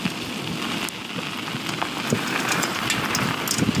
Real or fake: real